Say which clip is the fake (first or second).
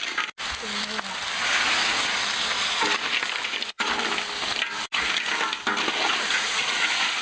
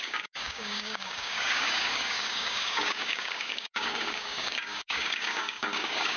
second